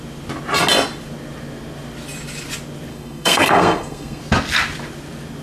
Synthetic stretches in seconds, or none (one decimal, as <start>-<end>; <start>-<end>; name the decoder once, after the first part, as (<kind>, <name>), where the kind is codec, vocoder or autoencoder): 2.9-4.2 (codec, SNAC)